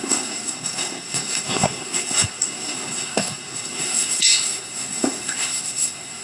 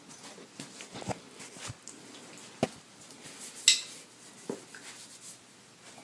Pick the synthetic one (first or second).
first